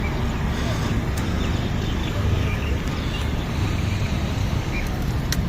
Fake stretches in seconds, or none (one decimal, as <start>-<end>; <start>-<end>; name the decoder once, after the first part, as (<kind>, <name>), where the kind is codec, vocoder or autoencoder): 2.0-2.7 (codec, DAC); 4.4-5.1

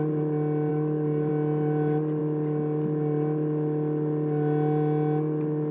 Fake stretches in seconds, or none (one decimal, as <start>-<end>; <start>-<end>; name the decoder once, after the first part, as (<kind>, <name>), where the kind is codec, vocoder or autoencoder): 0.7-1.3 (codec, DAC)

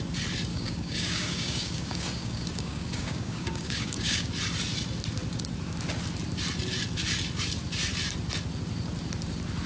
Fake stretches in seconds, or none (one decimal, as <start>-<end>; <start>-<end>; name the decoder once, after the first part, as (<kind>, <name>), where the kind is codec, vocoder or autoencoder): 0.5-4.3 (codec, DAC)